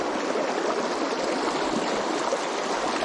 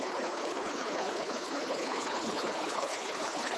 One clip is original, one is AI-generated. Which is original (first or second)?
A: first